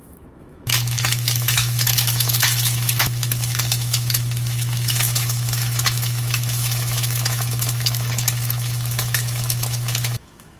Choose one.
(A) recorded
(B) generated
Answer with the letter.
B